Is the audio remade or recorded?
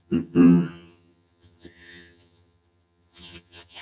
remade